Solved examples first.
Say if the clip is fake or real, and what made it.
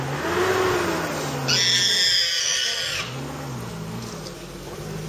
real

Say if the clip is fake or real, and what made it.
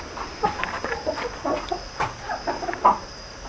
real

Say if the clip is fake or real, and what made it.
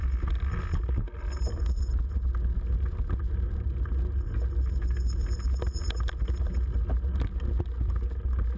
real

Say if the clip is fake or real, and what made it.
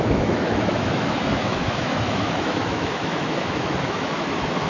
fake, autoencoder, DAC-VAE